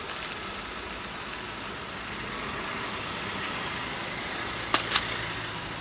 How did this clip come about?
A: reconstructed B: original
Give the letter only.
B